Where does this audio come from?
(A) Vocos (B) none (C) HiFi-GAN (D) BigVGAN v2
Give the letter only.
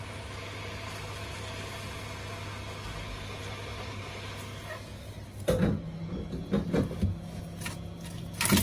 B